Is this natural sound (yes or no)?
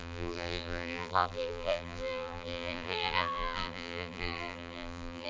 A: no